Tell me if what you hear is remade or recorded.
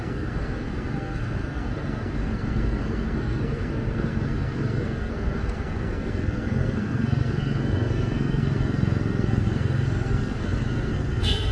remade